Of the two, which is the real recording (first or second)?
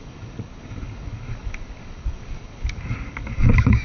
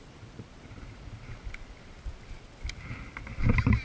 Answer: second